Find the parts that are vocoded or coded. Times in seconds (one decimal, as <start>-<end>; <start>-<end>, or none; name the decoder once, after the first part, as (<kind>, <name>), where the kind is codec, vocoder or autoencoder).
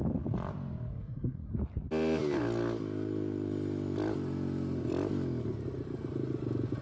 0.9-1.5 (codec, SNAC)